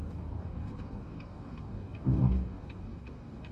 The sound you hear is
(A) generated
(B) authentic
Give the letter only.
A